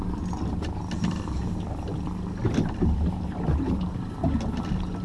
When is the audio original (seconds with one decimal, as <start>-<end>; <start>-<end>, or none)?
0.0-5.0